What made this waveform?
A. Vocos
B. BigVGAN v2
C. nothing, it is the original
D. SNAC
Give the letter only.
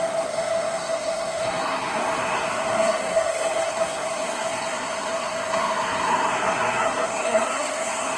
D